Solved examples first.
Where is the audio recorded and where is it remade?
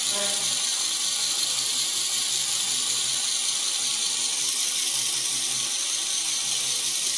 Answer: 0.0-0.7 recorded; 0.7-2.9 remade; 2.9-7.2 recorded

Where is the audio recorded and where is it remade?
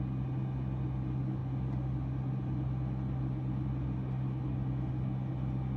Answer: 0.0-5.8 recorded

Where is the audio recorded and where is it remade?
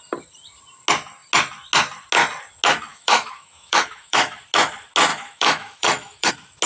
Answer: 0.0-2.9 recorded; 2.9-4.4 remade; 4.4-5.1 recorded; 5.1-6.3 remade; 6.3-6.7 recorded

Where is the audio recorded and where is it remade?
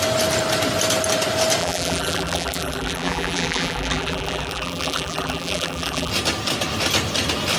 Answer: 0.0-1.6 recorded; 1.6-6.1 remade; 6.1-7.6 recorded